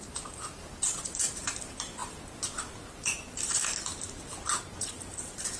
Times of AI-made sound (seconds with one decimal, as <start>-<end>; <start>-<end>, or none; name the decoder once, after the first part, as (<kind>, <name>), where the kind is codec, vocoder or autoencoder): 0.0-5.6 (vocoder, BigVGAN v2)

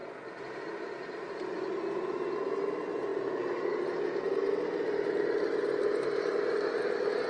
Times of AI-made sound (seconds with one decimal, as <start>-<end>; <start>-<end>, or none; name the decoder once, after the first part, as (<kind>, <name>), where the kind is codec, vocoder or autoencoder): none

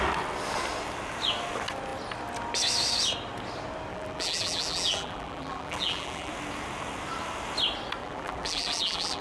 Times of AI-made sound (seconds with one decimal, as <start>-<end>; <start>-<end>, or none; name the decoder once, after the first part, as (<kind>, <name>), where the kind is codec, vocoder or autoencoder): 3.9-6.3 (vocoder, BigVGAN v2); 8.0-9.2

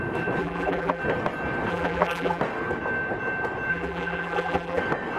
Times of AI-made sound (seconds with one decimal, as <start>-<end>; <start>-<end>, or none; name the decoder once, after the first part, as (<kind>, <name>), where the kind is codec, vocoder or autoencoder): 0.4-1.0 (vocoder, BigVGAN v2); 1.7-2.4; 3.7-4.8